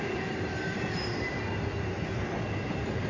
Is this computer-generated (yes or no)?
no